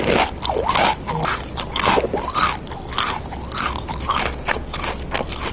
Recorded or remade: recorded